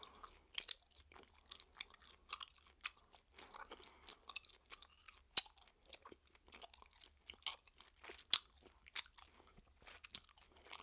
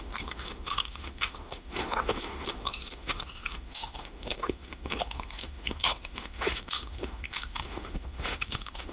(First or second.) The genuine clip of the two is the first